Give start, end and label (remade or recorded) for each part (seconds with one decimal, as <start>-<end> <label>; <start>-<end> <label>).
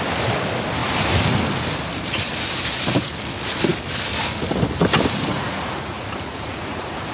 0.0-5.3 recorded; 5.3-7.1 remade